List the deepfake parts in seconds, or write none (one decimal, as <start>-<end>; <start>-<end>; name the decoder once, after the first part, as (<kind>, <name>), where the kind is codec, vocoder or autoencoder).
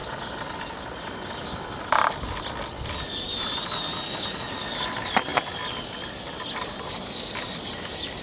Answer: 4.4-8.2 (vocoder, BigVGAN v2)